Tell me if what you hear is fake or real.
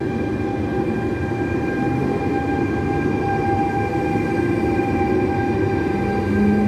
real